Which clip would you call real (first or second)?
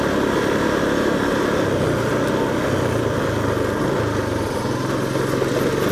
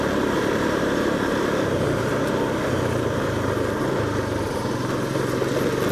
first